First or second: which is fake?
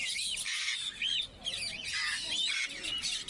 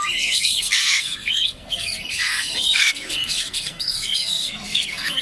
second